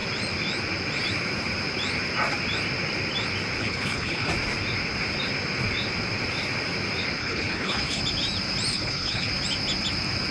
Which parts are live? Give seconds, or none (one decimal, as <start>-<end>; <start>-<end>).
0.0-3.6; 4.3-7.2; 8.0-8.7; 9.3-10.3